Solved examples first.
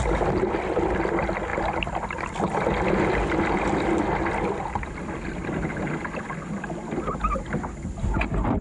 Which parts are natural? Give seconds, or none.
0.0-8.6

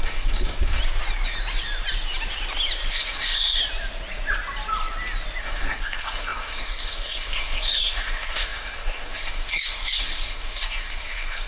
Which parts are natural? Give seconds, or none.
0.8-2.9; 3.6-5.4